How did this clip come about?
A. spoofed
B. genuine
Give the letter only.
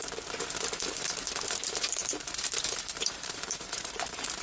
A